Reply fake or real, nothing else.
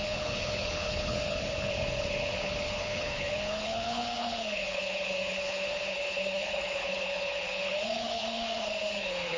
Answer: fake